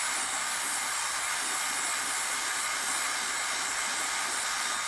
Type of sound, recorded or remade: recorded